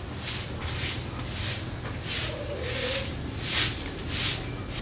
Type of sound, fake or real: real